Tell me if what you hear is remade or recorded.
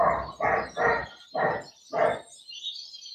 recorded